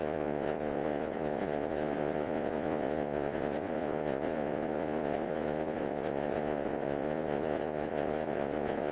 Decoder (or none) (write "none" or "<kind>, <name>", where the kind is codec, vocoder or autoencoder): vocoder, Vocos